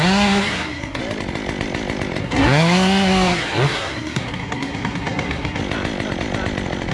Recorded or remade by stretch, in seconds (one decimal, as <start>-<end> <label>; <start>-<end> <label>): 0.0-1.0 remade; 1.0-2.2 recorded; 2.2-5.6 remade; 5.6-6.9 recorded